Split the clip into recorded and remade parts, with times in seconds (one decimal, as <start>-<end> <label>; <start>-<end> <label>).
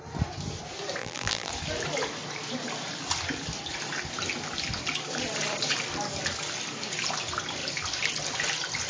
0.0-1.0 recorded; 1.0-1.5 remade; 1.5-8.9 recorded